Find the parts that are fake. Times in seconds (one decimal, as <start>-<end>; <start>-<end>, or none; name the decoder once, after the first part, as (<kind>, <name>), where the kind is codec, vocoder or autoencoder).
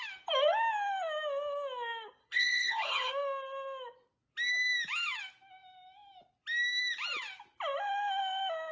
2.2-3.1 (codec, HILCodec)